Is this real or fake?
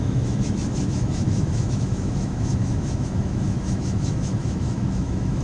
fake